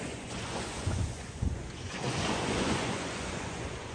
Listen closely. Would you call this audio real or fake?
fake